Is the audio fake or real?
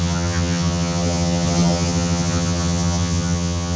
fake